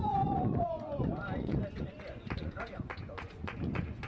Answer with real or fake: fake